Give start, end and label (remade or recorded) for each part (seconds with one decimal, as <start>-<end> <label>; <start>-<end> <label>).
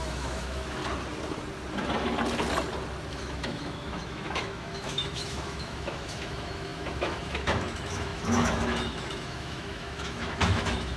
0.0-0.8 remade; 0.8-3.1 recorded; 3.1-11.0 remade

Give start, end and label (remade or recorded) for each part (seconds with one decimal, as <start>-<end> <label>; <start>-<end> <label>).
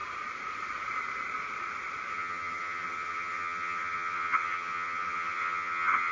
0.0-2.1 recorded; 2.1-6.1 remade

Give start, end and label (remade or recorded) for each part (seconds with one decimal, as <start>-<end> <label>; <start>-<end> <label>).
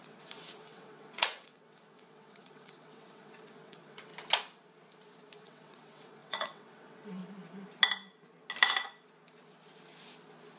0.0-4.1 remade; 4.1-5.4 recorded; 5.4-7.2 remade; 7.2-10.6 recorded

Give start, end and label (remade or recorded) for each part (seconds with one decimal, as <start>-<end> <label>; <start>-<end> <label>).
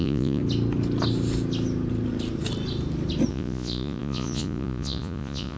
0.0-0.4 remade; 0.4-3.3 recorded; 3.3-5.6 remade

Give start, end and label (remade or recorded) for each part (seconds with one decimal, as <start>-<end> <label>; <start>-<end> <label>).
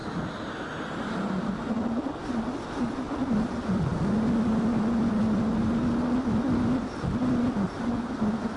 0.0-8.6 recorded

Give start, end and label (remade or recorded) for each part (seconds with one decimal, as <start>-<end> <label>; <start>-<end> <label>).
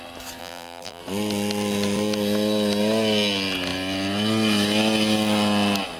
0.0-0.4 recorded; 0.4-1.0 remade; 1.0-6.0 recorded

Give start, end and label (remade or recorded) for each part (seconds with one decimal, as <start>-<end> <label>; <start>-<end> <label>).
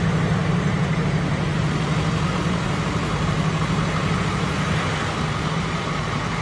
0.0-4.9 remade; 4.9-5.5 recorded; 5.5-6.4 remade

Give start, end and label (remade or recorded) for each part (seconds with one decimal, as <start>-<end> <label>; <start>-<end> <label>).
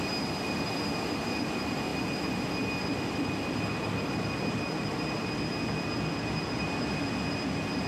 0.0-7.9 recorded